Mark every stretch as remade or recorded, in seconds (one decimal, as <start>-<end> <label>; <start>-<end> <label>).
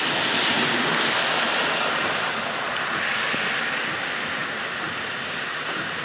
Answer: 0.0-6.0 recorded